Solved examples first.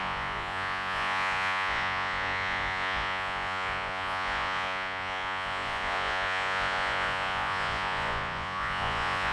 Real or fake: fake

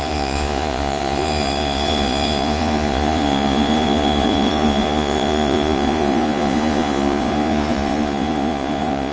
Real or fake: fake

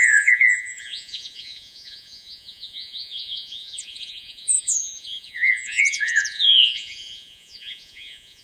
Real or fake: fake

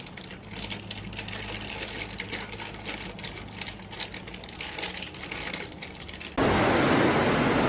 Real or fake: real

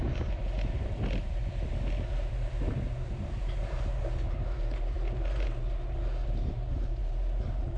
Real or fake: real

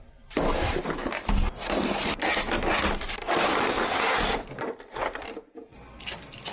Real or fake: real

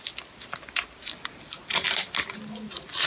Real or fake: real